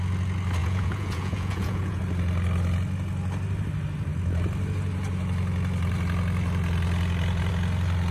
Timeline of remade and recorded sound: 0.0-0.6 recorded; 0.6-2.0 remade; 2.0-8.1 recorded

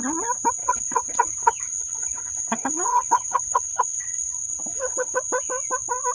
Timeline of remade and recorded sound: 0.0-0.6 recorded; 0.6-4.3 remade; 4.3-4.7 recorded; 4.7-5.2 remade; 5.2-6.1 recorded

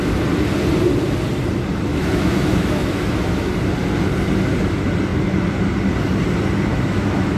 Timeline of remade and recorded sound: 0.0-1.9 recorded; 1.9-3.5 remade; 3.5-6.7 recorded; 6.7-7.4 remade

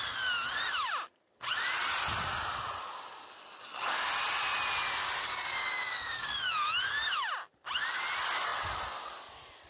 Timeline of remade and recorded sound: 0.0-5.2 recorded; 5.2-6.5 remade; 6.5-9.7 recorded